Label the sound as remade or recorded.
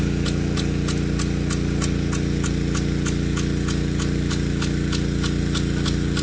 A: recorded